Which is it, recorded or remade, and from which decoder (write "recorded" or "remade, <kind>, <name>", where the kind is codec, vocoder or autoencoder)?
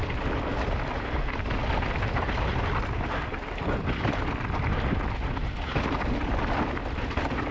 recorded